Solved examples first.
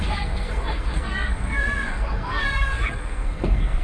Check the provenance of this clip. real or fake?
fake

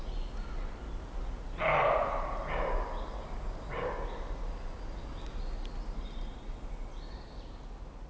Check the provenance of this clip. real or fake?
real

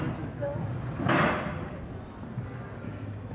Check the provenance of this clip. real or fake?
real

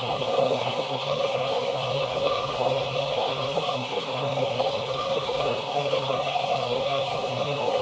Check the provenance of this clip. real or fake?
fake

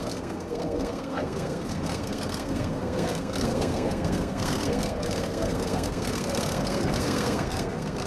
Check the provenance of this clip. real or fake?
fake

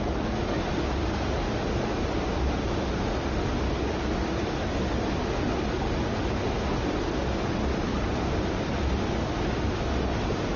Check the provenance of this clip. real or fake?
real